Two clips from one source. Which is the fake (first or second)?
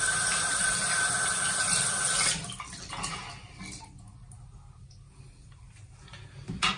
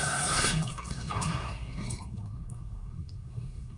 second